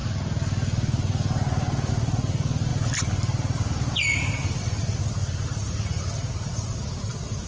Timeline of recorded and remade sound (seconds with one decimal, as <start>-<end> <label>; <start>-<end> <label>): 0.0-1.9 recorded; 1.9-7.5 remade